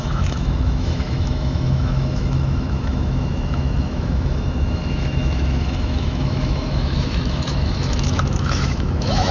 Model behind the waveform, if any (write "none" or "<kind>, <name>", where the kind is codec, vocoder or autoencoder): autoencoder, DAC-VAE